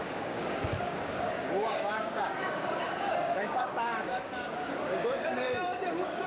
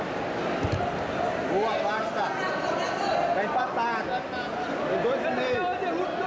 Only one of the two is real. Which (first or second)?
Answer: second